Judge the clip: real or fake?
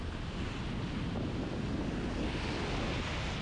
real